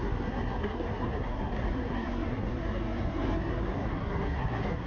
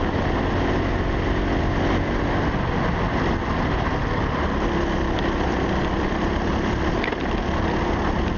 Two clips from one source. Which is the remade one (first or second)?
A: first